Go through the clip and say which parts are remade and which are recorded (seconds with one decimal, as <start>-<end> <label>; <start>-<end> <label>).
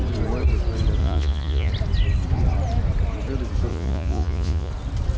0.0-1.0 recorded; 1.0-1.7 remade; 1.7-3.7 recorded; 3.7-4.7 remade; 4.7-5.2 recorded